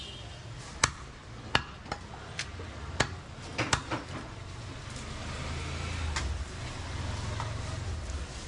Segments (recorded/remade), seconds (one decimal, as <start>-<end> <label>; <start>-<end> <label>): 0.0-8.5 recorded